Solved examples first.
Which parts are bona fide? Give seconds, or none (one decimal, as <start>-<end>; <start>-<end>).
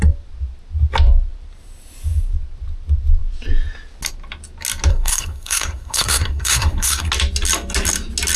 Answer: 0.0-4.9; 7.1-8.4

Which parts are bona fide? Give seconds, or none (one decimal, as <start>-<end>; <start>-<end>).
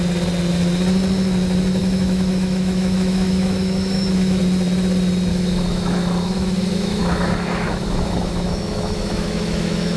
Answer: 0.0-1.8; 4.4-5.3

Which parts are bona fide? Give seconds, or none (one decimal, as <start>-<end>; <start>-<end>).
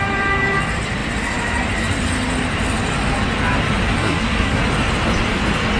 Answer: 0.0-4.0; 4.6-5.8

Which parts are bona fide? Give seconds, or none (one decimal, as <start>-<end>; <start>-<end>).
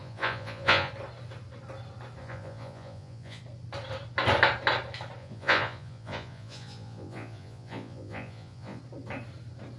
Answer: 0.9-2.2; 3.4-5.2; 8.8-9.8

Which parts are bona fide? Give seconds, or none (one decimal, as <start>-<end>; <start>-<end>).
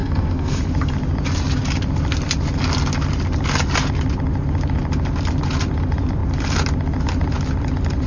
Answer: 0.6-8.1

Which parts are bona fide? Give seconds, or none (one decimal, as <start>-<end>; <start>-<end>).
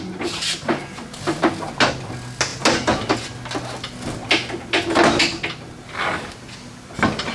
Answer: 0.0-7.3